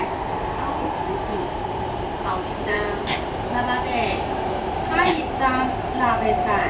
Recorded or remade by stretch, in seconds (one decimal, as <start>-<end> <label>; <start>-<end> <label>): 0.0-1.3 recorded; 1.3-3.5 remade; 3.5-6.7 recorded